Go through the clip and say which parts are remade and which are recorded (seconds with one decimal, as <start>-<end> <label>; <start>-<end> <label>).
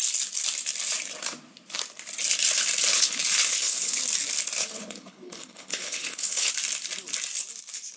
0.0-2.9 recorded; 2.9-4.0 remade; 4.0-4.6 recorded; 4.6-6.5 remade; 6.5-8.0 recorded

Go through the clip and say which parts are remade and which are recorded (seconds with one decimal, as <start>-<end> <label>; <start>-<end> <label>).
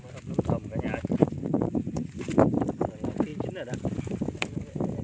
0.0-1.2 recorded; 1.2-2.3 remade; 2.3-5.0 recorded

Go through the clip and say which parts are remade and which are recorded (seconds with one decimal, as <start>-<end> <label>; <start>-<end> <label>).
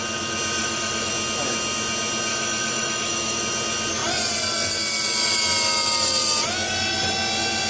0.0-0.6 recorded; 0.6-1.1 remade; 1.1-2.3 recorded; 2.3-3.4 remade; 3.4-7.7 recorded